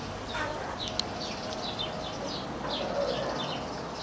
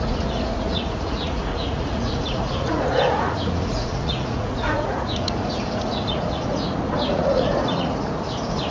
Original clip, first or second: first